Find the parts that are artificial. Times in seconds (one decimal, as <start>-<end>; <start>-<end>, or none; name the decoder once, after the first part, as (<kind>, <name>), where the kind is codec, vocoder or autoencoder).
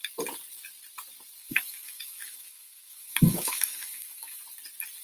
1.4-4.4 (autoencoder, DAC-VAE)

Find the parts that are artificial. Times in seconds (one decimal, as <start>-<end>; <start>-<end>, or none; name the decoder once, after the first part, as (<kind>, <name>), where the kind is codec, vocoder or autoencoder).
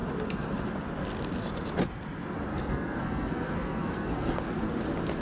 2.5-4.4 (codec, SNAC)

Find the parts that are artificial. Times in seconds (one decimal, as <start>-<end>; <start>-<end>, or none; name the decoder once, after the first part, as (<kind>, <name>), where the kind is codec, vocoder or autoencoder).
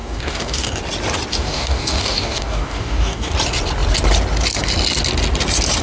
0.0-0.8 (codec, DAC); 1.3-3.3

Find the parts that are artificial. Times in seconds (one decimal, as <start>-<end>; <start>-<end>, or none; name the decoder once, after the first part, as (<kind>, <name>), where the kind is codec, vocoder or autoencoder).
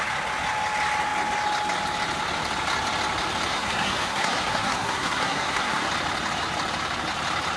3.5-5.9 (codec, SNAC)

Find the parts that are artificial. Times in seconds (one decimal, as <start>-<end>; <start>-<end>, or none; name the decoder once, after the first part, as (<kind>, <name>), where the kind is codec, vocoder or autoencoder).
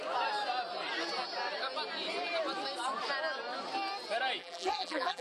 4.4-5.2 (vocoder, BigVGAN v2)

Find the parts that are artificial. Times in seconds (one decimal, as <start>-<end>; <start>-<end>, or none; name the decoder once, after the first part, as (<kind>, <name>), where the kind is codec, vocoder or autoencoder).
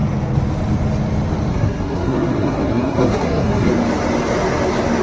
1.5-3.7 (codec, SNAC)